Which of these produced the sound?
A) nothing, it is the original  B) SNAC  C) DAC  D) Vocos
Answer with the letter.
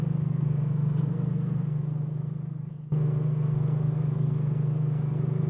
B